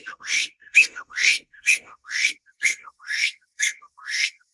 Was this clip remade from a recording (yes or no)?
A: yes